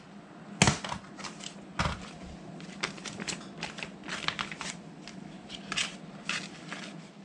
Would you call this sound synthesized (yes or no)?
no